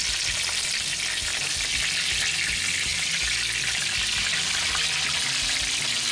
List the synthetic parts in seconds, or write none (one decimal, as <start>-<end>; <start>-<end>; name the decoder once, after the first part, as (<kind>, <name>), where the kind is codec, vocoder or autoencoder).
0.0-1.7 (vocoder, BigVGAN v2)